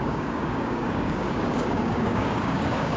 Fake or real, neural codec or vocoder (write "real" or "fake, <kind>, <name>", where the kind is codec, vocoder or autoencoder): fake, codec, DAC